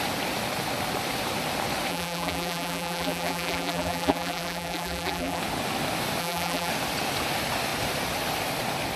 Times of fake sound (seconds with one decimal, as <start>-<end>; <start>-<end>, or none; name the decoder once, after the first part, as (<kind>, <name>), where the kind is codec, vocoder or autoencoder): 1.9-5.4 (vocoder, BigVGAN v2); 6.2-6.7